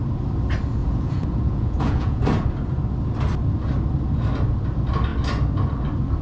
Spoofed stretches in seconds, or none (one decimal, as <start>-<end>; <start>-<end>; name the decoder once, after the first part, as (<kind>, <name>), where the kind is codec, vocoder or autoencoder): 0.8-2.2 (vocoder, Vocos)